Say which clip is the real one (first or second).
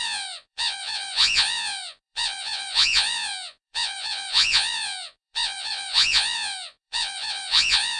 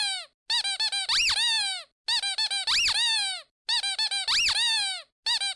second